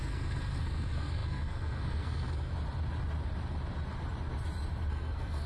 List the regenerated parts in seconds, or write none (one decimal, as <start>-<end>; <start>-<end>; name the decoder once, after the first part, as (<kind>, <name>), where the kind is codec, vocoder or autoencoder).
0.0-2.5 (codec, SNAC); 4.9-5.5